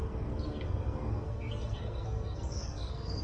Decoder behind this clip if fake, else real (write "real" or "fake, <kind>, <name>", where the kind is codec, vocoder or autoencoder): fake, codec, SNAC